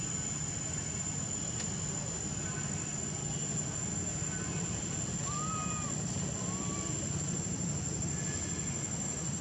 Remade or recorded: recorded